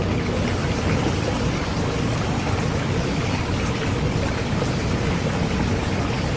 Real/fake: real